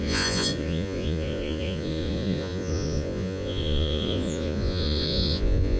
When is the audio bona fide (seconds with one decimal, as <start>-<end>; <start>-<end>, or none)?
none